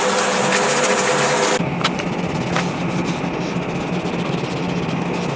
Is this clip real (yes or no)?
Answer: yes